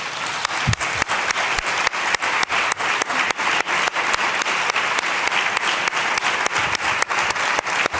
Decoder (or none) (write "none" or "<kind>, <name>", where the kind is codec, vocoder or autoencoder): none